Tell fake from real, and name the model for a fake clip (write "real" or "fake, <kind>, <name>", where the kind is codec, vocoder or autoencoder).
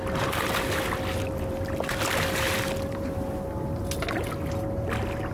real